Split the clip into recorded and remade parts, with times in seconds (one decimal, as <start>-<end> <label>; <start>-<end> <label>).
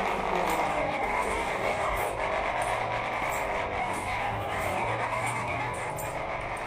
0.0-0.7 recorded; 0.7-2.1 remade; 2.1-3.8 recorded; 3.8-5.9 remade; 5.9-6.7 recorded